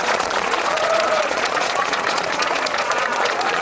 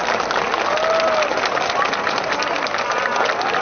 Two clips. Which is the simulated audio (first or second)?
first